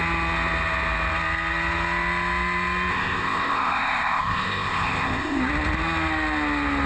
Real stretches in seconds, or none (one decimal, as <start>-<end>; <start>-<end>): 0.0-2.9; 5.4-6.9